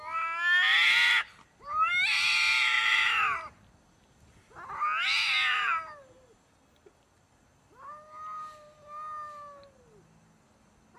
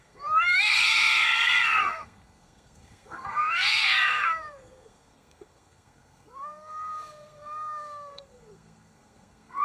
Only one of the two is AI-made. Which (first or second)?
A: second